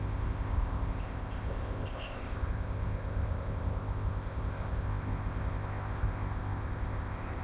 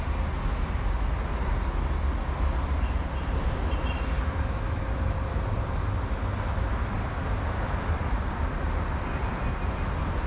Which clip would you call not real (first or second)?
first